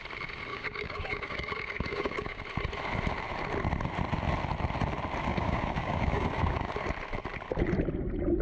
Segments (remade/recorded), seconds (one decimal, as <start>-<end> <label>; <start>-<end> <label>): 0.0-0.5 recorded; 0.5-2.4 remade; 2.4-5.3 recorded; 5.3-6.7 remade; 6.7-8.4 recorded